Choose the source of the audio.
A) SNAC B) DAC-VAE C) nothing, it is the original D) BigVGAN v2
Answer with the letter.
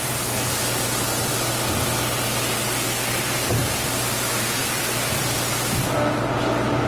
C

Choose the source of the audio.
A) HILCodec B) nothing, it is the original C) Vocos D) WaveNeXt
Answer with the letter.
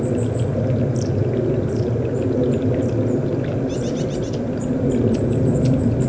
B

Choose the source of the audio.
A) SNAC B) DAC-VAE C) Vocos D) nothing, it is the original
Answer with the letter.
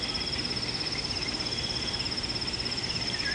D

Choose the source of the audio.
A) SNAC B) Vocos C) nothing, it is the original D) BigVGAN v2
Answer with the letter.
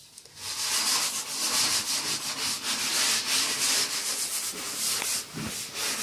C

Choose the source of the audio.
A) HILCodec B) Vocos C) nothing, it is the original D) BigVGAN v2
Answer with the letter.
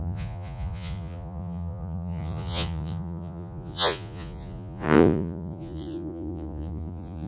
B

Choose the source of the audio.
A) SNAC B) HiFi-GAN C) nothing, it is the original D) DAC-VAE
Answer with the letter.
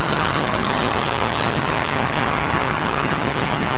B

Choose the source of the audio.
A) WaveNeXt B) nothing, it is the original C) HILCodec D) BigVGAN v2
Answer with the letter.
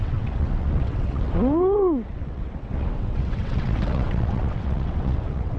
A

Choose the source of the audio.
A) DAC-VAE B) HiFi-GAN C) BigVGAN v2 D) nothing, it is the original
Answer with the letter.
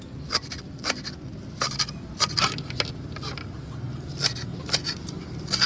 D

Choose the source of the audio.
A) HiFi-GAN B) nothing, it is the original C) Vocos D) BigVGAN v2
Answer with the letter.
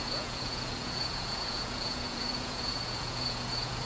C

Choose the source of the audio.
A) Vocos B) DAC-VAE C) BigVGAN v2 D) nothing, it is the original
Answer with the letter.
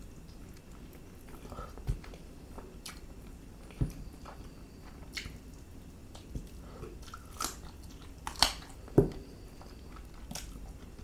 D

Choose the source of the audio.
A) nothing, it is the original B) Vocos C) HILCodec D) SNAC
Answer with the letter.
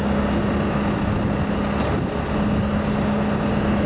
A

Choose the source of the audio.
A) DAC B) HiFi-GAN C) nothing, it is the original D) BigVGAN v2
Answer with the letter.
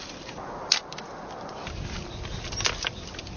C